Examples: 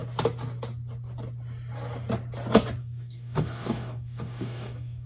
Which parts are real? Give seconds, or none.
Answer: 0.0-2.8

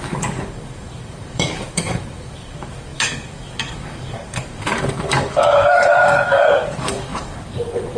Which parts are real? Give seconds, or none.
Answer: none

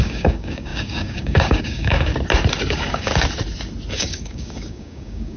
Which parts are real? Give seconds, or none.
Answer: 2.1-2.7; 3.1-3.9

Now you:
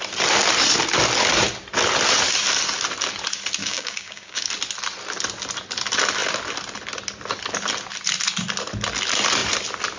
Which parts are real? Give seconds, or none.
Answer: 0.0-3.6; 4.5-10.0

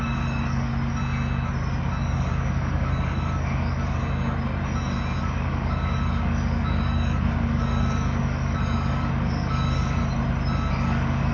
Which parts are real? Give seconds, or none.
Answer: 0.7-2.0; 4.0-5.2; 10.0-10.7

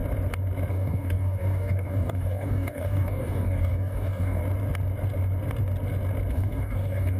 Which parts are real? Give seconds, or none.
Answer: 0.0-0.7; 4.4-6.3

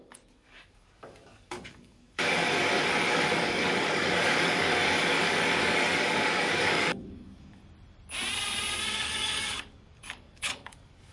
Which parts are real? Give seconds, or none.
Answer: 7.6-8.9